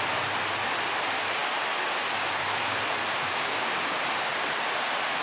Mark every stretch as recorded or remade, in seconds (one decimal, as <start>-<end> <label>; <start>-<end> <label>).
0.0-5.2 recorded